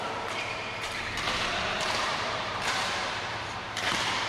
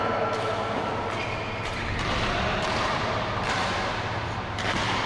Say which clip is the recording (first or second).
second